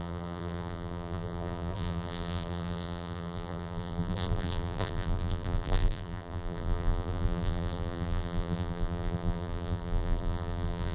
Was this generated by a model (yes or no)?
yes